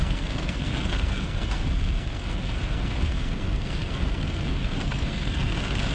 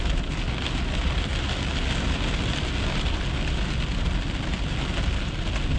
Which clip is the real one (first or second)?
second